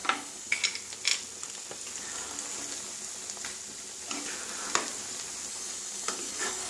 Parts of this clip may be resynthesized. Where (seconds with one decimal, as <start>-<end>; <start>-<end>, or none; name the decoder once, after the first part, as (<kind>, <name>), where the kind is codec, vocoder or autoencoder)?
0.0-0.6 (codec, DAC); 5.5-6.7

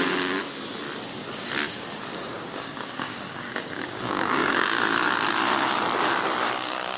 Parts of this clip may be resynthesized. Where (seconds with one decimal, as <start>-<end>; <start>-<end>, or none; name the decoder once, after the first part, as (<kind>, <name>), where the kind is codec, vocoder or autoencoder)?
2.1-4.8 (codec, DAC)

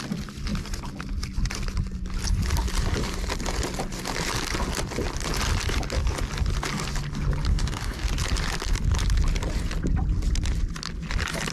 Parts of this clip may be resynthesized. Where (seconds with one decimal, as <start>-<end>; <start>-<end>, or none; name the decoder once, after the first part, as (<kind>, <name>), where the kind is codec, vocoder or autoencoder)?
7.5-8.1 (codec, DAC)

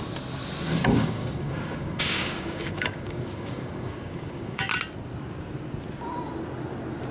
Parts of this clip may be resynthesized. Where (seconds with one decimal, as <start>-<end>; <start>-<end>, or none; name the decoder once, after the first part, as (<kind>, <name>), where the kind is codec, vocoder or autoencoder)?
0.7-4.7 (codec, DAC)

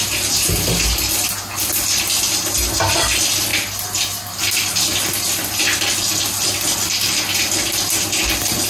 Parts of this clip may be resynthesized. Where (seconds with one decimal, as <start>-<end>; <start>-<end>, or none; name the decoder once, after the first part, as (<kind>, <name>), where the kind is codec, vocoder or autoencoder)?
none

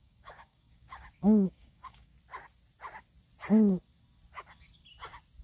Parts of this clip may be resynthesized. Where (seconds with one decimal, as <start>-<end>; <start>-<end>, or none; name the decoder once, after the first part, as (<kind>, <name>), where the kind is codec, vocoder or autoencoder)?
0.0-2.1 (codec, DAC)